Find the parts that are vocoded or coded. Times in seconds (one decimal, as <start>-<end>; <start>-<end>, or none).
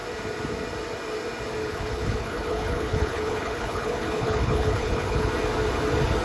1.6-5.3